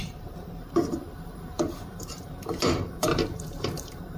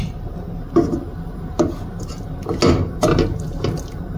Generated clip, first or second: first